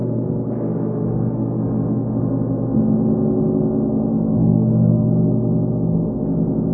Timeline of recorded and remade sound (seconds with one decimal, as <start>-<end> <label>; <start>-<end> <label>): 0.0-2.2 remade; 2.2-4.1 recorded; 4.1-5.1 remade; 5.1-6.7 recorded